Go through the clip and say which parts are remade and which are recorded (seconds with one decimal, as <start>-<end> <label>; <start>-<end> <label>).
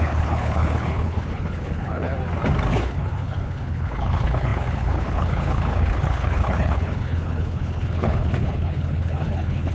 0.0-2.1 remade; 2.1-2.7 recorded; 2.7-9.7 remade